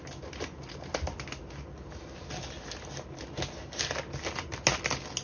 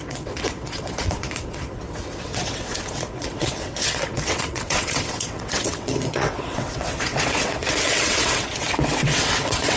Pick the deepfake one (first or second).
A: second